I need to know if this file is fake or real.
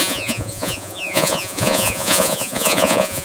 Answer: fake